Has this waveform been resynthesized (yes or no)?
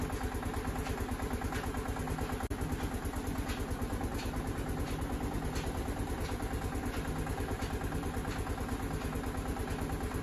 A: no